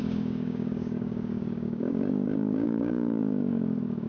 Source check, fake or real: fake